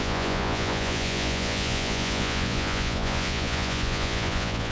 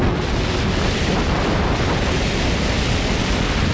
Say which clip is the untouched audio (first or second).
second